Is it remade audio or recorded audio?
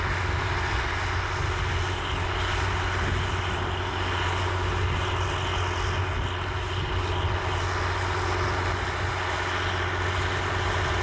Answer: recorded